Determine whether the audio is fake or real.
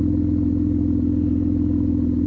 real